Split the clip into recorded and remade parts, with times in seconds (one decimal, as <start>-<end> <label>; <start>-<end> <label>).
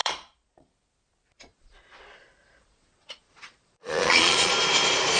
0.0-0.7 remade; 0.7-1.5 recorded; 1.5-4.5 remade; 4.5-5.2 recorded